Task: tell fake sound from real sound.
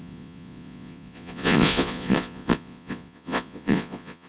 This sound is fake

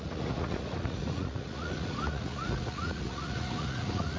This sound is fake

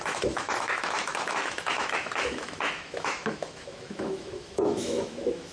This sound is fake